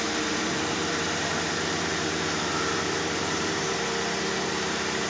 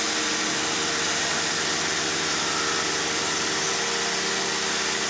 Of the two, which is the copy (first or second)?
first